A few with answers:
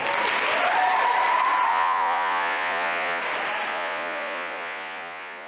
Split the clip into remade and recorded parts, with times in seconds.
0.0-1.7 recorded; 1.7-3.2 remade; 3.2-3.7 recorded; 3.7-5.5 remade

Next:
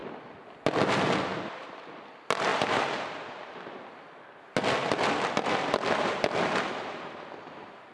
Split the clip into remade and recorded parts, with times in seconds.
0.0-7.9 recorded

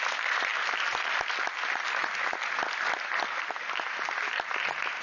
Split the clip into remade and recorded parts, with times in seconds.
0.0-5.0 recorded

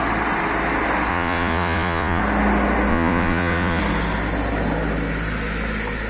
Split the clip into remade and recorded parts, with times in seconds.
0.0-1.1 recorded; 1.1-2.2 remade; 2.2-2.9 recorded; 2.9-3.8 remade; 3.8-6.1 recorded

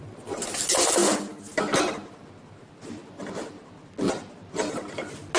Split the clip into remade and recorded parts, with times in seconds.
0.0-5.4 recorded